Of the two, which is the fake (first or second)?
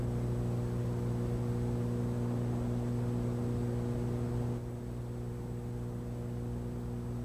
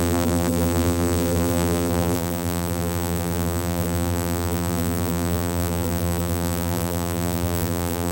second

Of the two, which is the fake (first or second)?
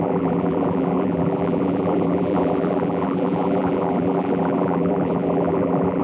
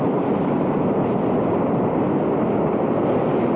first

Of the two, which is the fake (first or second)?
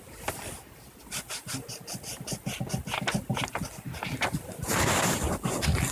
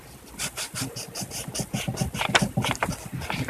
second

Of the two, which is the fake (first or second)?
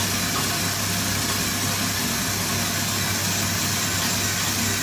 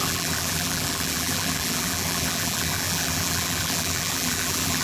second